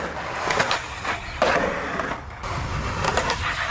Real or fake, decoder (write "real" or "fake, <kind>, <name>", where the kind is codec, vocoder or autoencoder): real